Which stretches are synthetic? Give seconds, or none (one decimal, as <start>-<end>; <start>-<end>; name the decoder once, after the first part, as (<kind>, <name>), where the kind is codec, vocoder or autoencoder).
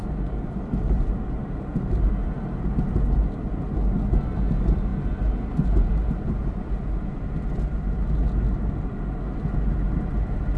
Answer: none